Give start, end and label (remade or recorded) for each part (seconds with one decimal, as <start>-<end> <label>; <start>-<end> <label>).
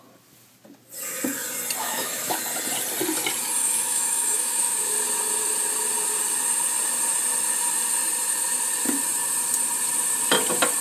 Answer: 0.0-1.8 recorded; 1.8-2.4 remade; 2.4-3.6 recorded; 3.6-4.9 remade; 4.9-10.8 recorded